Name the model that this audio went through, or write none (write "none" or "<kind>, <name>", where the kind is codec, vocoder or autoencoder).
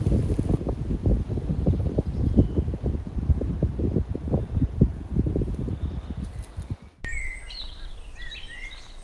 none